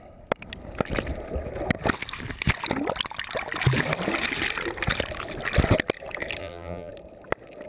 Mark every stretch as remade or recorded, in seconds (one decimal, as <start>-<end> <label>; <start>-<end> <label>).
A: 0.0-6.4 recorded; 6.4-6.9 remade; 6.9-7.7 recorded